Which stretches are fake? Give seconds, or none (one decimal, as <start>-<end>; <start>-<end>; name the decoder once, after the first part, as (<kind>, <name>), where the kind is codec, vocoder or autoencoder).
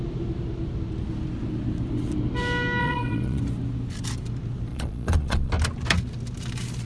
2.8-3.4 (vocoder, Vocos); 4.7-5.5